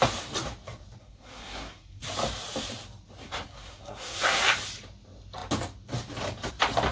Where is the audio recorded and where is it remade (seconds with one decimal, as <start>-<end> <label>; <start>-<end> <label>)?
0.0-1.0 recorded; 1.0-2.0 remade; 2.0-3.2 recorded; 3.2-4.4 remade; 4.4-6.9 recorded